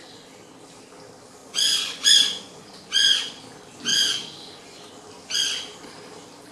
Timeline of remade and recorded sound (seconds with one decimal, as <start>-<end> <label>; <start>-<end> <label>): 0.0-1.4 recorded; 1.4-3.4 remade; 3.4-3.9 recorded; 3.9-4.9 remade; 4.9-6.5 recorded